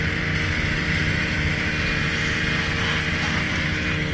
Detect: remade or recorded recorded